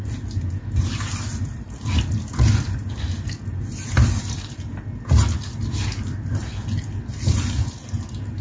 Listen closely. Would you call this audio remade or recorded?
recorded